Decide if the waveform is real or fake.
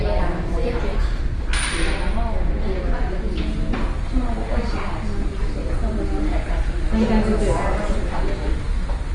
real